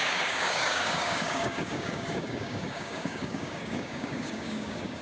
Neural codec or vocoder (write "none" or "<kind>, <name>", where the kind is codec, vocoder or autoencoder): codec, DAC